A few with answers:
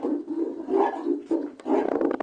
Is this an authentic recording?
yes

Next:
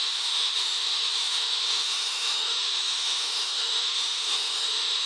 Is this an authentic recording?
no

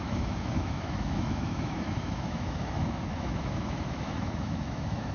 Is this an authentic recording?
no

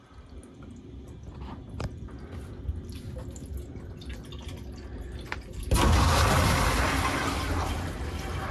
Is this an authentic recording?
yes